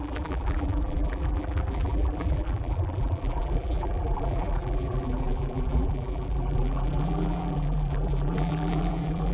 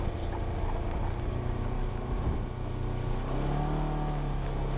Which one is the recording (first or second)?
second